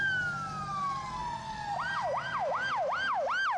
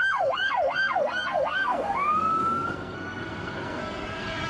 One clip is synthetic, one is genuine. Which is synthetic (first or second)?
second